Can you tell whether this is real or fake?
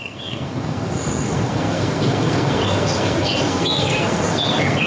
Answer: fake